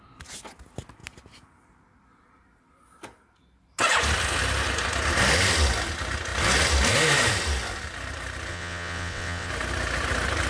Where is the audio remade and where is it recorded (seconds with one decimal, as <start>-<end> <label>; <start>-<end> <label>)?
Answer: 0.0-8.5 recorded; 8.5-9.5 remade; 9.5-10.5 recorded